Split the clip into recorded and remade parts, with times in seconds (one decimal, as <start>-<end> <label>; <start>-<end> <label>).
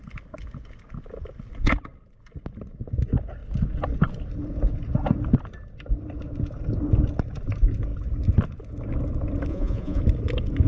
0.0-9.5 recorded; 9.5-10.0 remade; 10.0-10.7 recorded